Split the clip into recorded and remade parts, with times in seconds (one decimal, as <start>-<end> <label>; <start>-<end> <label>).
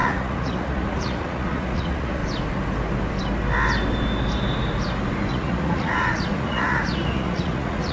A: 0.0-2.2 remade; 2.2-5.3 recorded; 5.3-7.9 remade